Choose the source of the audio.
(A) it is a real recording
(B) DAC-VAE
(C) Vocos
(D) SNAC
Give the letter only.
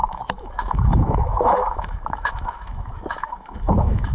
B